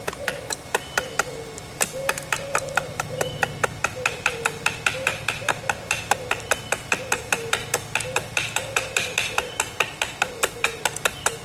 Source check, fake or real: real